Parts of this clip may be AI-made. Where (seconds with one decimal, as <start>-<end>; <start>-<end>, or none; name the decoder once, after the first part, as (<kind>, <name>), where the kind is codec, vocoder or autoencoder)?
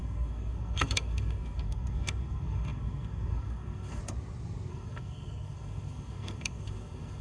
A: 0.0-4.0 (codec, SNAC); 4.7-7.2